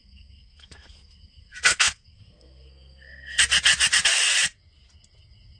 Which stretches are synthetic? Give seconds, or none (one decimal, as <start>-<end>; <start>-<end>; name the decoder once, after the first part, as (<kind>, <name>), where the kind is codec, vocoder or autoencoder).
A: 0.0-3.4 (codec, SNAC)